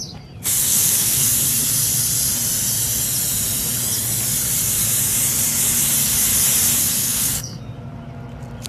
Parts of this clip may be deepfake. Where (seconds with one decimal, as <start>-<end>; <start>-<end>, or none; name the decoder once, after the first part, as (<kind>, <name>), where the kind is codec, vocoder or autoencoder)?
0.6-1.3 (codec, SNAC); 7.0-7.6